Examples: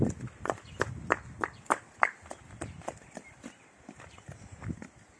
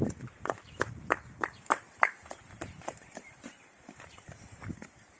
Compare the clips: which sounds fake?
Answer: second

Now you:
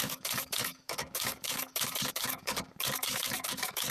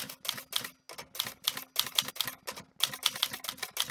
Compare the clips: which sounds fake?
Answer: first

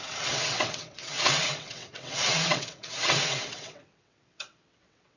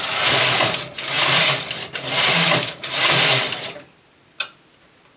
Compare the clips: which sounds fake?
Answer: first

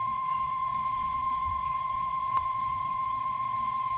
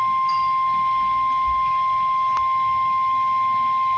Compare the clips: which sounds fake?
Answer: first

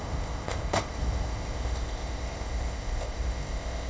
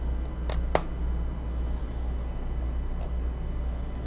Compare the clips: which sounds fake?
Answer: first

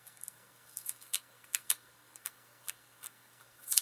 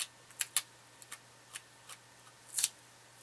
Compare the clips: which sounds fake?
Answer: first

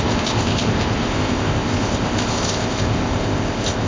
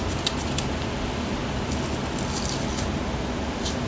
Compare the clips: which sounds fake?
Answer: first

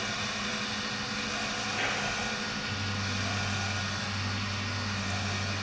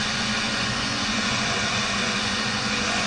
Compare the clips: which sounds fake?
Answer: second